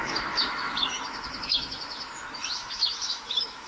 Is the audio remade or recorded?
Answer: remade